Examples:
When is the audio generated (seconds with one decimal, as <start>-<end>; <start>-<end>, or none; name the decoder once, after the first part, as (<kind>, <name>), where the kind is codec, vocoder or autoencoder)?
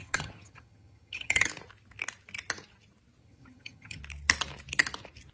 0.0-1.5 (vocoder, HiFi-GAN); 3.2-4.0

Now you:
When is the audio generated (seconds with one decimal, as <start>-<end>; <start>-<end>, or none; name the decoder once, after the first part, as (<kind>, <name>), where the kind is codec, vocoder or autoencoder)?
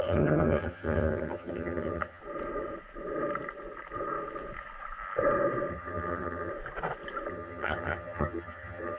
0.0-2.2 (vocoder, HiFi-GAN); 5.7-6.5; 7.3-9.0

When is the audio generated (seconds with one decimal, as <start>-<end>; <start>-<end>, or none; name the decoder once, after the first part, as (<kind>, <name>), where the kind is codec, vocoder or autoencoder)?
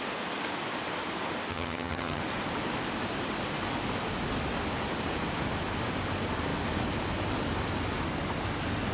1.5-2.2 (vocoder, HiFi-GAN)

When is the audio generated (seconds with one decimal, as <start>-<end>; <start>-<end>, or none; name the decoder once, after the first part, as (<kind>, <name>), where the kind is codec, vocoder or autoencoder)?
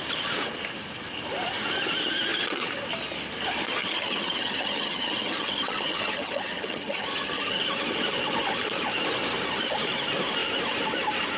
3.8-7.6 (vocoder, HiFi-GAN)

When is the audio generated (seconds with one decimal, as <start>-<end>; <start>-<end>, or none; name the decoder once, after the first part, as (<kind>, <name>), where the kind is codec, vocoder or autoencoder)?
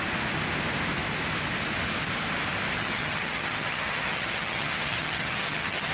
2.8-5.9 (vocoder, HiFi-GAN)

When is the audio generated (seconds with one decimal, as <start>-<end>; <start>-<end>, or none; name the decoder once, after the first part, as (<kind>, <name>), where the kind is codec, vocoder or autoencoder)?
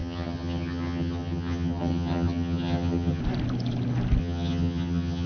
0.0-3.2 (vocoder, HiFi-GAN); 4.2-5.3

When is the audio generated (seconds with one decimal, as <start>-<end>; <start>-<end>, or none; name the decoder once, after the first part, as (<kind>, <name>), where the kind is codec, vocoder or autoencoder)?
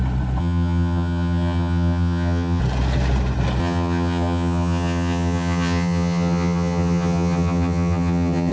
0.4-2.6 (vocoder, HiFi-GAN); 3.6-8.5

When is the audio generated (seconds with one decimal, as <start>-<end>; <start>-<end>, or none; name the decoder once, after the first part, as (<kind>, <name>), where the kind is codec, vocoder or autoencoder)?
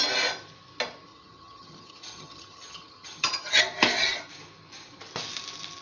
1.1-3.6 (vocoder, HiFi-GAN)